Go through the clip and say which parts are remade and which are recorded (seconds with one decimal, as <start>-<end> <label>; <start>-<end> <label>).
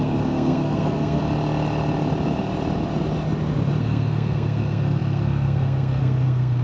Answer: 0.0-1.2 remade; 1.2-3.8 recorded; 3.8-6.6 remade